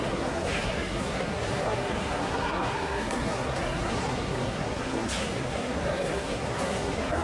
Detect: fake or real fake